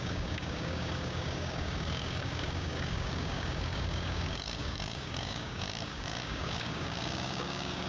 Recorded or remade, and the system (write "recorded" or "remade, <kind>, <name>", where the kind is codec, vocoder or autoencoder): remade, codec, DAC